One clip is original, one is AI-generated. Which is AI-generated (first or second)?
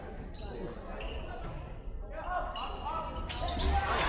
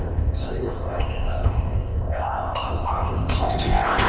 second